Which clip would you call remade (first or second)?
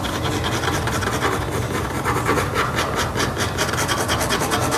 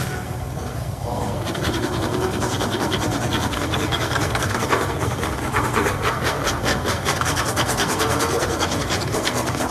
second